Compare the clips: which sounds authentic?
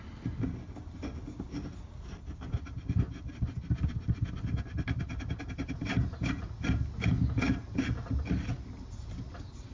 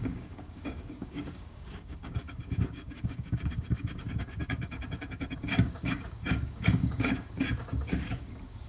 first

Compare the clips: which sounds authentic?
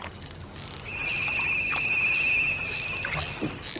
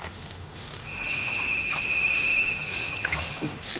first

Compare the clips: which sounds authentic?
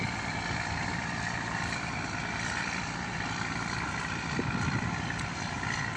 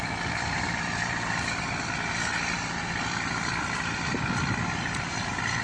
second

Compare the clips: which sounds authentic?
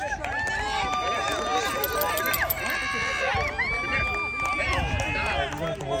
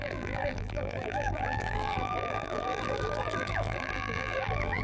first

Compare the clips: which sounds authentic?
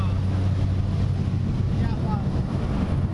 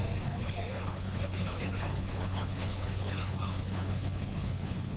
first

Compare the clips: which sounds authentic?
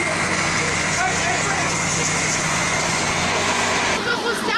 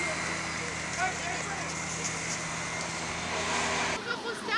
second